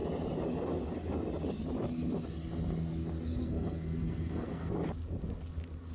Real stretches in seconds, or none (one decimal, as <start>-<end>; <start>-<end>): 0.0-3.4; 4.7-5.9

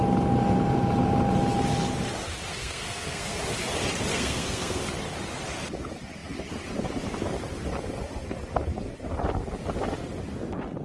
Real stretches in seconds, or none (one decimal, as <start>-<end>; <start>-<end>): 0.0-2.5; 3.4-4.1; 4.8-10.8